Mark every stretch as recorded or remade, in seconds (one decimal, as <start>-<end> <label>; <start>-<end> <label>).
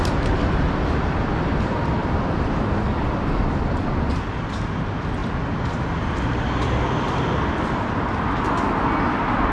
0.0-9.5 recorded